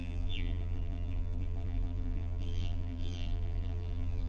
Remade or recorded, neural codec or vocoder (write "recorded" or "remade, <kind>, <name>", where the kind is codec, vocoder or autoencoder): remade, vocoder, BigVGAN v2